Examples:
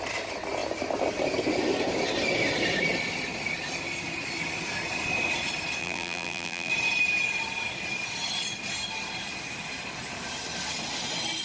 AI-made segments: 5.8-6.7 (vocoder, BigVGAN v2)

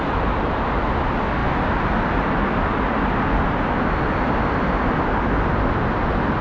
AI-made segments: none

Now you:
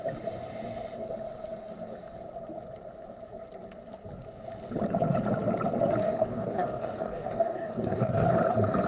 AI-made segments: 6.0-8.3 (codec, DAC)

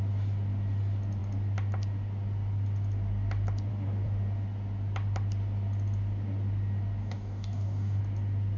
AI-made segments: 7.0-8.0 (codec, DAC)

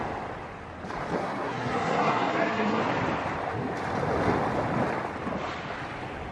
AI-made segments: 1.2-2.8 (codec, SNAC)